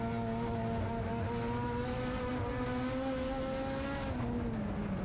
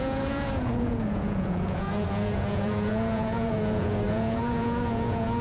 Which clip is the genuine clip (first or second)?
first